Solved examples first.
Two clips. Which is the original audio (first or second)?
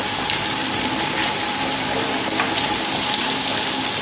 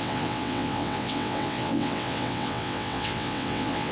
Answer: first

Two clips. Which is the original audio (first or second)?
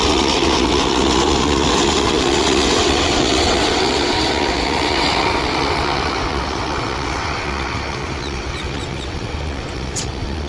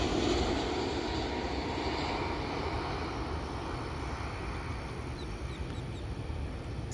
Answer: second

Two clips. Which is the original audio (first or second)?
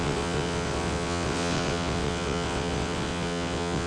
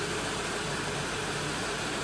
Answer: second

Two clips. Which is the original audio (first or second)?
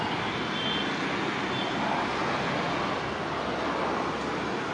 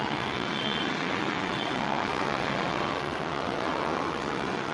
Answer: first